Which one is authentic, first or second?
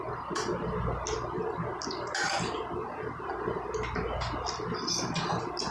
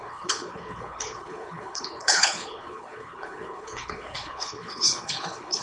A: first